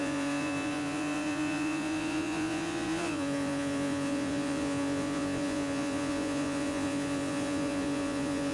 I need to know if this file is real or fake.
fake